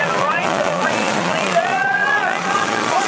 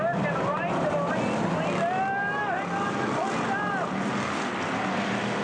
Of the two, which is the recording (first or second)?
second